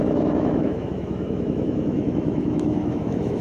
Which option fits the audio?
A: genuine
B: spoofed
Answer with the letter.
B